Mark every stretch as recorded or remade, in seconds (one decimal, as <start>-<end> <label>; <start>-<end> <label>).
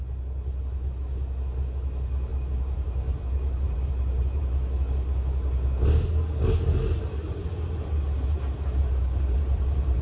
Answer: 0.0-2.3 recorded; 2.3-4.4 remade; 4.4-7.4 recorded; 7.4-10.0 remade